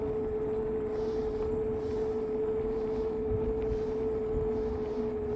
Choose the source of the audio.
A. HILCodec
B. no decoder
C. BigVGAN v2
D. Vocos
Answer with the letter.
B